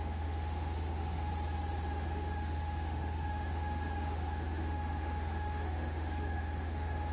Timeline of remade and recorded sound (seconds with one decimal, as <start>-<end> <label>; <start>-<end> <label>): 0.0-1.3 remade; 1.3-1.9 recorded; 1.9-7.1 remade